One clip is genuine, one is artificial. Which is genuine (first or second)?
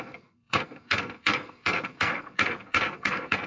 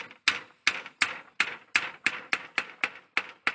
second